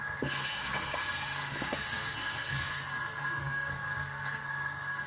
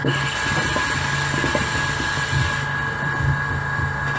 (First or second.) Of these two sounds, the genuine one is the second